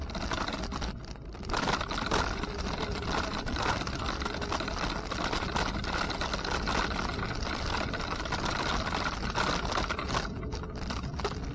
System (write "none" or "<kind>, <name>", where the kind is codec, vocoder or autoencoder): none